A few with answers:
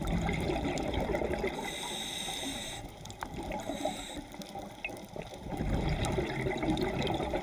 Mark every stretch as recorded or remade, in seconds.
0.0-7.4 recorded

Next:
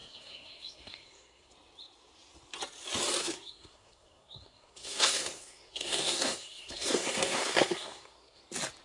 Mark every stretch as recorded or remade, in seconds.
0.0-1.5 remade; 1.5-3.2 recorded; 3.2-8.4 remade; 8.4-8.8 recorded

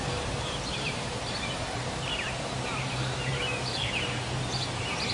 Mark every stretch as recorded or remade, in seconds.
0.0-2.1 remade; 2.1-2.8 recorded; 2.8-5.1 remade

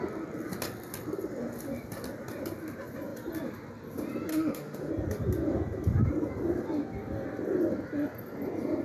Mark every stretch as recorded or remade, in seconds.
0.0-4.3 recorded; 4.3-4.9 remade; 4.9-8.8 recorded

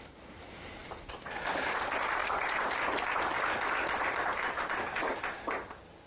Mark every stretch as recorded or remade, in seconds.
0.0-6.1 recorded